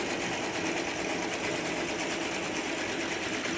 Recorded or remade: recorded